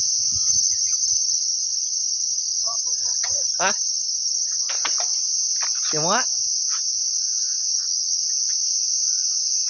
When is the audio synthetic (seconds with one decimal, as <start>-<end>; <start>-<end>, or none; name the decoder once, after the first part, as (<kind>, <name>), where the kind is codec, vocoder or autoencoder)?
0.5-4.7 (vocoder, HiFi-GAN); 7.7-8.2